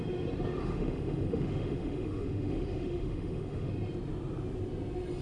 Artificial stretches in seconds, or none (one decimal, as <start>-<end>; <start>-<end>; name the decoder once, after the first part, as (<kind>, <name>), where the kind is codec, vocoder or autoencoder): 0.6-3.7 (autoencoder, DAC-VAE)